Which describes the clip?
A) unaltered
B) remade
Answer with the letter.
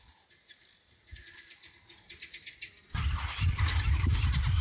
A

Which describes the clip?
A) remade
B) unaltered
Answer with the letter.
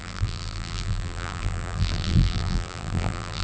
A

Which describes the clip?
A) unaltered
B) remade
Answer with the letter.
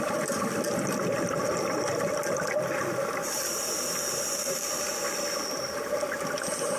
A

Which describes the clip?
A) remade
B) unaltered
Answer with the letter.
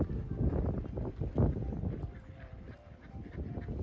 A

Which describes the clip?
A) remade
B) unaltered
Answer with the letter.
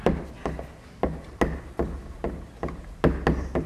B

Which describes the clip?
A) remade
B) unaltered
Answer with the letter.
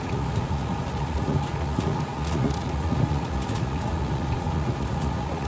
A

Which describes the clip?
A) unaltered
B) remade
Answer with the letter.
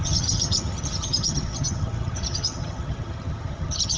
B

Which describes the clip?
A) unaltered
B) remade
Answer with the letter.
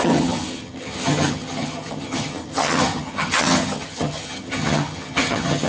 B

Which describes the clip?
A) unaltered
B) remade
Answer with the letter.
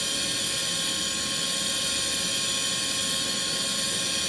A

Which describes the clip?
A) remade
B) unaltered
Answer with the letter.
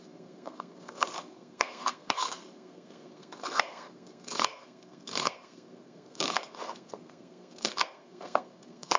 A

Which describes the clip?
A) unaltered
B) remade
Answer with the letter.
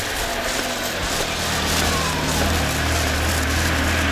A